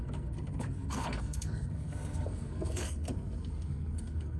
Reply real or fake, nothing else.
fake